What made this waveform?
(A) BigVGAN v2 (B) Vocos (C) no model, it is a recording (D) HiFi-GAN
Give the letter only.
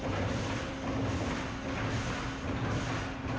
C